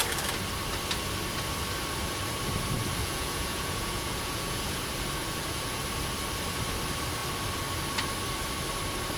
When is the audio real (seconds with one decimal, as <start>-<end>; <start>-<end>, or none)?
0.0-3.0; 4.8-5.2; 5.8-9.2